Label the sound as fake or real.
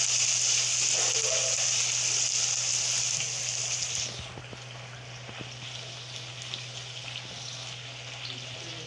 real